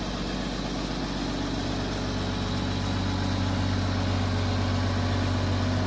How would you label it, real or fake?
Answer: real